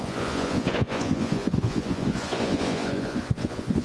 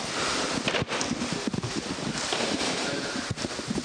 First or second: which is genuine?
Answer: second